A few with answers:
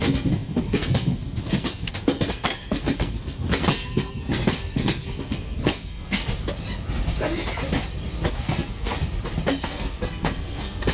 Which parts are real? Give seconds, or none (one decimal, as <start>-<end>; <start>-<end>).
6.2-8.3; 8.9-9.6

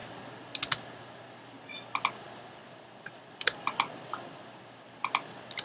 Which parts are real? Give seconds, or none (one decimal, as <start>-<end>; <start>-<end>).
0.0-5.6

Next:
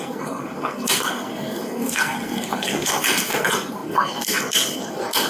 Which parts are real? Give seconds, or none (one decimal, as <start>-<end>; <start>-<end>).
none

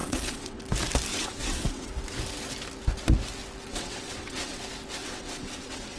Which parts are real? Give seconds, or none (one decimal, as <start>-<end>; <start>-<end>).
0.6-1.1; 1.9-3.7; 4.6-5.0

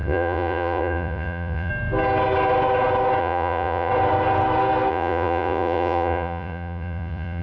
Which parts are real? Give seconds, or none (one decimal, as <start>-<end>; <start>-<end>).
1.7-3.2; 3.9-4.9

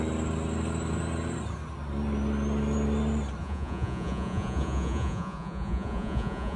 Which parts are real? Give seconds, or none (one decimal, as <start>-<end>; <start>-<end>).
0.0-3.4

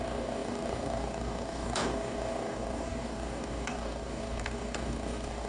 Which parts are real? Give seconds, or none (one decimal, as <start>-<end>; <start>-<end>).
none